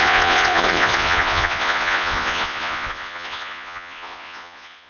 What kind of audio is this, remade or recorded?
remade